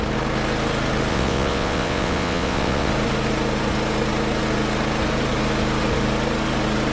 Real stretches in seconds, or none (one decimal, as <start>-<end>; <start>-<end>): 0.0-1.1; 2.9-6.9